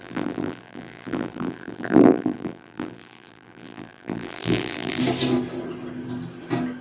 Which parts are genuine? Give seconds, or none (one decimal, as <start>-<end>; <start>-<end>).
5.0-6.8